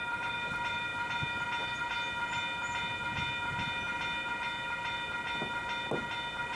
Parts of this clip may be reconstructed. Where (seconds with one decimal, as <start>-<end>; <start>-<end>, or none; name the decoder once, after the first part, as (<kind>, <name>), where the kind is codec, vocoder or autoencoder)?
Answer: none